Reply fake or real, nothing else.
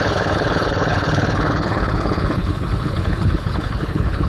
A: fake